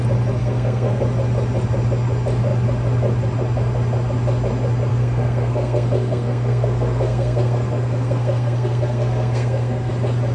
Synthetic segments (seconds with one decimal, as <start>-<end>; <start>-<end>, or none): 0.4-1.0; 4.9-9.9